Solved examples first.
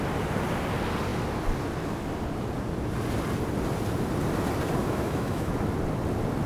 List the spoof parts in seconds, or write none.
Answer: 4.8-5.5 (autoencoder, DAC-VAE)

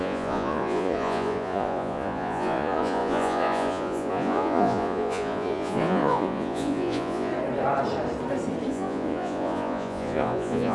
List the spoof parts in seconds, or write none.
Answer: 0.0-7.3 (vocoder, Vocos); 8.7-10.7

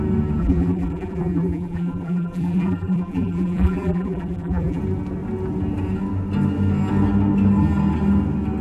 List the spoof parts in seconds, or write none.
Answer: 0.4-4.8 (vocoder, BigVGAN v2)

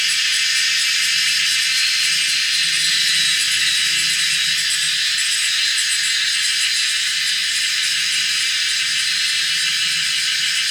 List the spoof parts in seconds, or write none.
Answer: 7.4-9.2 (vocoder, BigVGAN v2)

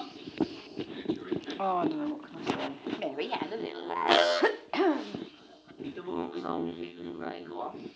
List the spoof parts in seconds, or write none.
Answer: 3.6-4.4 (vocoder, HiFi-GAN); 6.1-7.6

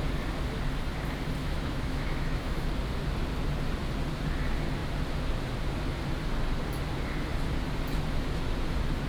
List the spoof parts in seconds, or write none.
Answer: 1.4-2.7 (autoencoder, DAC-VAE)

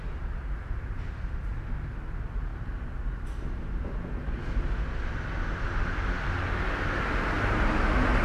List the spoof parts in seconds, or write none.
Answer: none